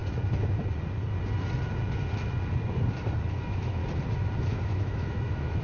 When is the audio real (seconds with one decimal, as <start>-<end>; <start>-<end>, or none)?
0.0-3.4; 3.8-4.4